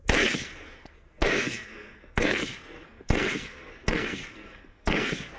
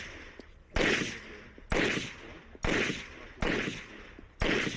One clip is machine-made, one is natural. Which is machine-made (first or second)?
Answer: first